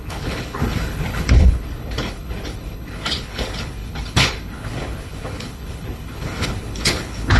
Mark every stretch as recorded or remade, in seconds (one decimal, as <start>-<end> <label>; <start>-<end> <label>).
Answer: 0.0-7.4 remade